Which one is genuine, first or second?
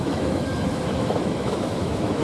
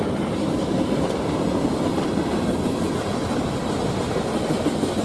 second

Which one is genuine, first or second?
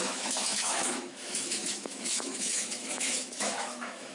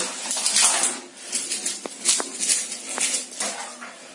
second